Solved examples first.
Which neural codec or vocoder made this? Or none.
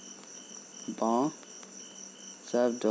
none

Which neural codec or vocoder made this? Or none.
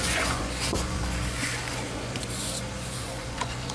vocoder, Vocos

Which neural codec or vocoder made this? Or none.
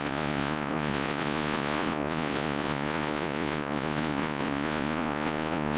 vocoder, Vocos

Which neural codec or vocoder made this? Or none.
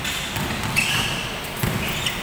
none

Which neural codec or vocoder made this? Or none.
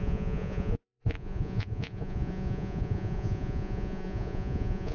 vocoder, Vocos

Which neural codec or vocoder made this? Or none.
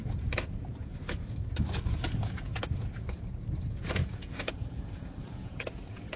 vocoder, Vocos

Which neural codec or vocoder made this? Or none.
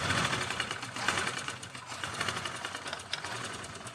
vocoder, Vocos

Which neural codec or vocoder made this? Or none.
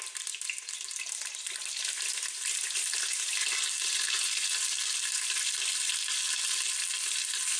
none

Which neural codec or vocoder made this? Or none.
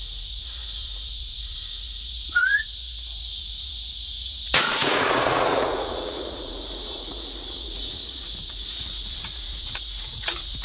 vocoder, Vocos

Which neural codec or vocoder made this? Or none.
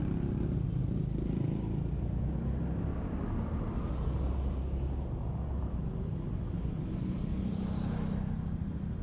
none